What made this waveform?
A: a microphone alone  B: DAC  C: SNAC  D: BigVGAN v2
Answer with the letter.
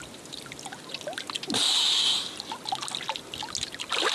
A